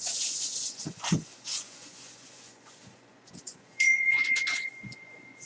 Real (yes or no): no